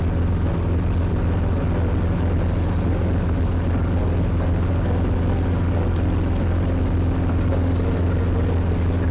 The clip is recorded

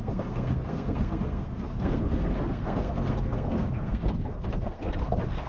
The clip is remade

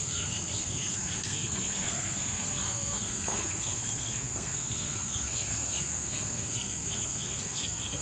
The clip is remade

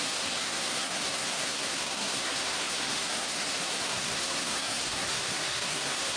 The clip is remade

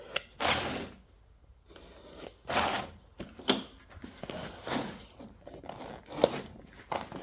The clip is recorded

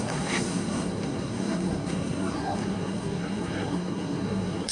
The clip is remade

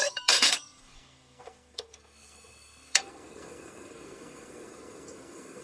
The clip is remade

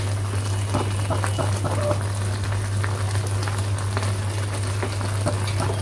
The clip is recorded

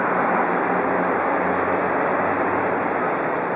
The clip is recorded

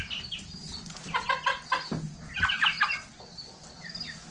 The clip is recorded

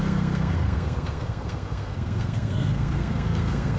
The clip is remade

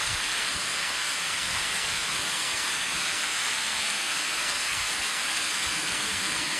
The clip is remade